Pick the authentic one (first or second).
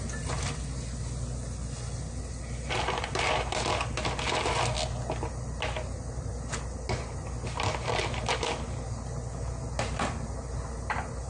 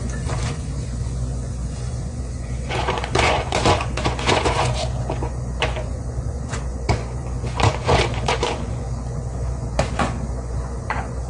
first